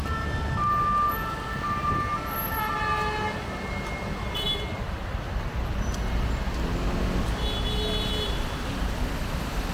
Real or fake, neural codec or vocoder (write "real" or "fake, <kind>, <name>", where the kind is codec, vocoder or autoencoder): real